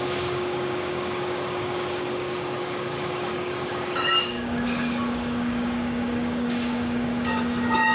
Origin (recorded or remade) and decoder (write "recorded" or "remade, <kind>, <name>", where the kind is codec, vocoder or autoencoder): remade, codec, DAC